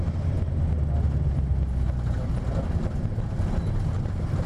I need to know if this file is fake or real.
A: real